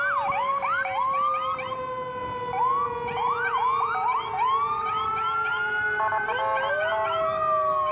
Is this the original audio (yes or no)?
yes